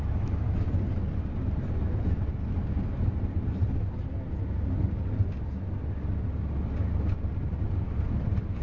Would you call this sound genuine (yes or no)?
yes